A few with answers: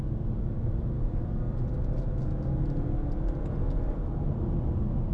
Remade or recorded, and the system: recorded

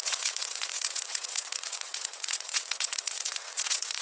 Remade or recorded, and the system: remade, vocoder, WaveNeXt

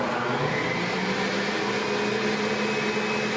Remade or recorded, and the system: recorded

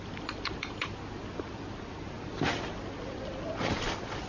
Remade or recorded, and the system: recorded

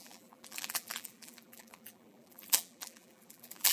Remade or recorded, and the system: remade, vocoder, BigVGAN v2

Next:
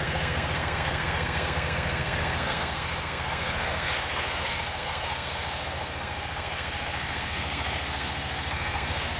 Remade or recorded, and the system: remade, codec, SNAC